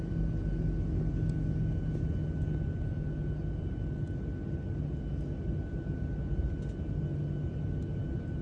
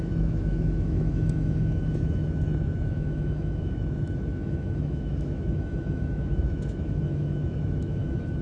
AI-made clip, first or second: second